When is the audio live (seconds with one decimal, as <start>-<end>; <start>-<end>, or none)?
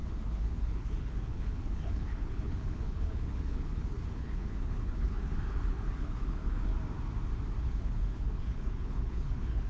6.7-7.6